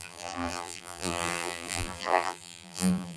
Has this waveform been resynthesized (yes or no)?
yes